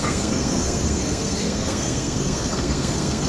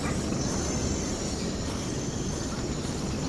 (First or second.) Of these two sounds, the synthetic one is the first